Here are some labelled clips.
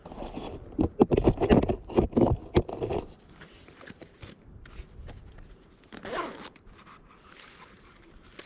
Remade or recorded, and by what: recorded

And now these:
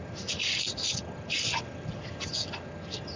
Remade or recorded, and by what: recorded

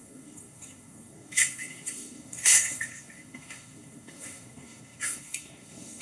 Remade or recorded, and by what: remade, codec, SNAC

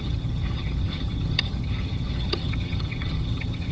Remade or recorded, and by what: remade, vocoder, HiFi-GAN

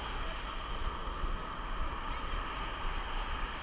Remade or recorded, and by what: recorded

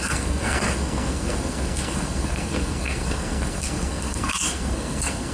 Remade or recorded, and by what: remade, codec, SNAC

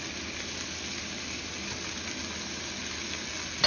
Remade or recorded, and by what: recorded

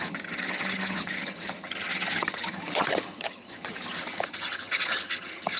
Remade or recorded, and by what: remade, vocoder, HiFi-GAN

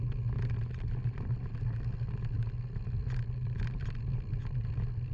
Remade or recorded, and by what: recorded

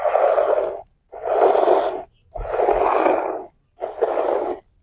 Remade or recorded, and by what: recorded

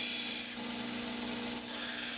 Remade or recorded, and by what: recorded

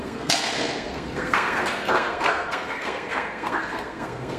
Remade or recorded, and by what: remade, codec, SNAC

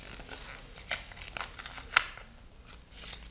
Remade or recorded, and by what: recorded